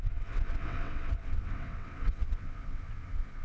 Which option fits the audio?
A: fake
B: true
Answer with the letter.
A